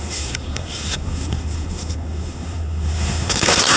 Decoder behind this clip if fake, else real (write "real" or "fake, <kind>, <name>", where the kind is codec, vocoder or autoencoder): fake, codec, SNAC